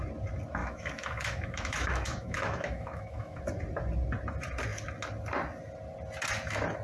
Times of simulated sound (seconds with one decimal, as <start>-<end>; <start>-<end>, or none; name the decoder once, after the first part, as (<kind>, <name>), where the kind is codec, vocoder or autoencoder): 0.6-3.4 (autoencoder, DAC-VAE)

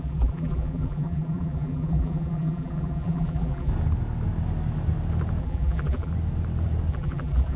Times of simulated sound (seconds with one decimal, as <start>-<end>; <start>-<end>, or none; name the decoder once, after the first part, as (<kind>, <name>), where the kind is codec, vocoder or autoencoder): 0.0-3.7 (vocoder, BigVGAN v2); 5.4-6.1; 6.9-7.6

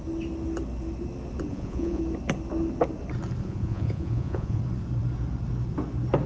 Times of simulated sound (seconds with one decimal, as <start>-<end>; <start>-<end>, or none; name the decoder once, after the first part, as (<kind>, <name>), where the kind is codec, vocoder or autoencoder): 1.5-2.0 (vocoder, Vocos); 3.4-4.6

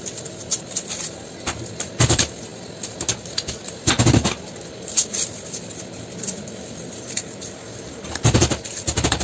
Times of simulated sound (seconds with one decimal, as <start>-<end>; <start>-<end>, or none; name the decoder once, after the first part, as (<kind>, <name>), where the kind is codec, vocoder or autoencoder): 0.0-2.5 (vocoder, BigVGAN v2); 4.7-9.2

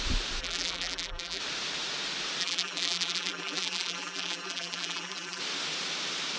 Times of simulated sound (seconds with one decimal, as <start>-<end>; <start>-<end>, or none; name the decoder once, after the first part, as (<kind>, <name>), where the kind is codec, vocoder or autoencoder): 0.4-1.4 (vocoder, BigVGAN v2); 2.4-5.4

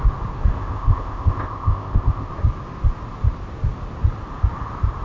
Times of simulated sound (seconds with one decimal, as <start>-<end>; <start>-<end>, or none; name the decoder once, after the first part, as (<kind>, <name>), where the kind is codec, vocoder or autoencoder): 0.5-2.3 (codec, ZipCodec)